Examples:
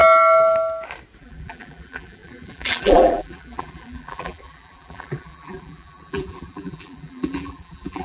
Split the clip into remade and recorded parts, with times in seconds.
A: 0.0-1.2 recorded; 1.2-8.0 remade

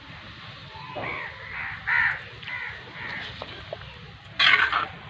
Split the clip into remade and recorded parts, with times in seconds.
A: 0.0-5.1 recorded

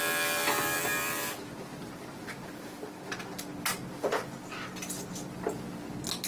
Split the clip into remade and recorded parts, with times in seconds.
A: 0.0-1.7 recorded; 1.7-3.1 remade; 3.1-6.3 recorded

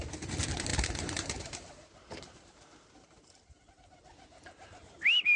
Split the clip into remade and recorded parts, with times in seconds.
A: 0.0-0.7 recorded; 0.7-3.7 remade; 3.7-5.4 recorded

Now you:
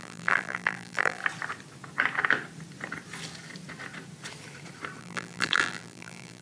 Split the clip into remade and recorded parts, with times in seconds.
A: 0.0-1.2 remade; 1.2-5.0 recorded; 5.0-6.4 remade

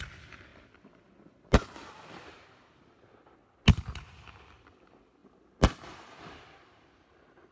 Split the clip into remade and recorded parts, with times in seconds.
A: 0.0-7.5 recorded